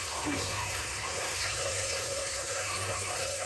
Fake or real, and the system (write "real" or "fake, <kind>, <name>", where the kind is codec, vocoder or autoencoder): fake, codec, SNAC